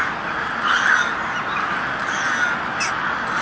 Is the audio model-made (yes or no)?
no